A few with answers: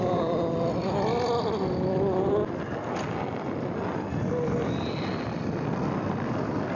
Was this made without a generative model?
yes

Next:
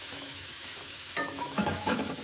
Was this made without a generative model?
no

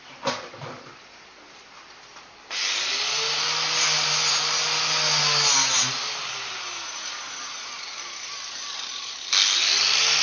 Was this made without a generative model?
yes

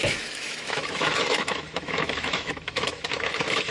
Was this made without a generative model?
no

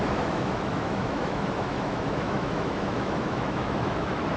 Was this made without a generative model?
no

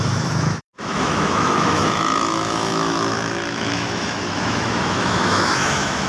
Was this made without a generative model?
no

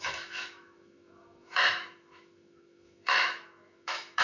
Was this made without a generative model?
no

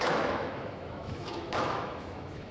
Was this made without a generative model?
no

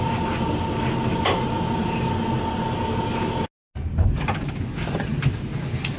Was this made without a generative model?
yes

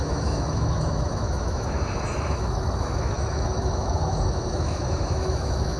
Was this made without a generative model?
no